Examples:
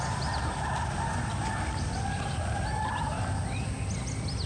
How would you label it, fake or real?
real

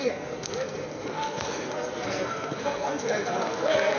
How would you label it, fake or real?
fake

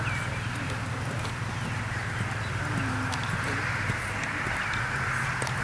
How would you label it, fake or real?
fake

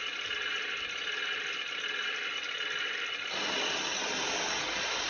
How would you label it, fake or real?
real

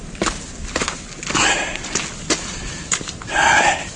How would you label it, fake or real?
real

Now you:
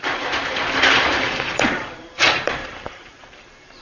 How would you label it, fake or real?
fake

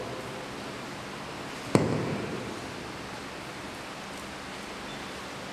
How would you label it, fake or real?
real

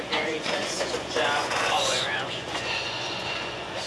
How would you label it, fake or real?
fake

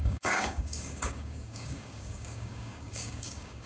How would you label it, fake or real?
fake